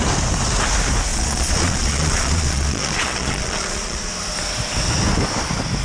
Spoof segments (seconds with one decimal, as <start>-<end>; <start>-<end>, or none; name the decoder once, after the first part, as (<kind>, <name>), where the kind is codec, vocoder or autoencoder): 1.1-4.1 (vocoder, Vocos)